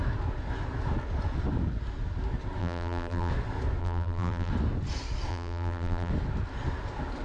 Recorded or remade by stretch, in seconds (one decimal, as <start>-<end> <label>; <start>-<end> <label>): 0.0-2.6 recorded; 2.6-3.3 remade; 3.3-3.8 recorded; 3.8-4.5 remade; 4.5-5.3 recorded; 5.3-6.1 remade; 6.1-7.2 recorded